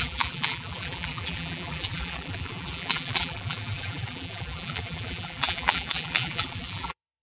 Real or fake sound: fake